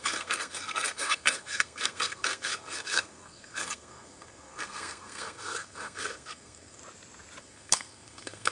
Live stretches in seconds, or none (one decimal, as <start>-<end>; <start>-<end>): 6.8-7.4